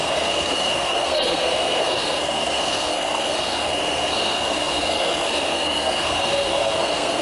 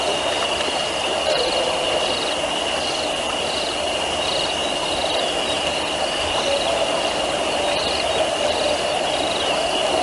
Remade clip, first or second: first